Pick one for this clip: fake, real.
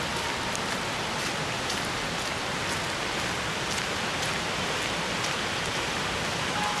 real